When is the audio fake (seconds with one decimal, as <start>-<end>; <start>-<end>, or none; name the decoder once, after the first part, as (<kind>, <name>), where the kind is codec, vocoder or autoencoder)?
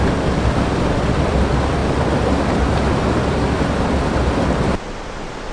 none